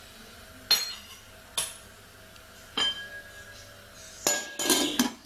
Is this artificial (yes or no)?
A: no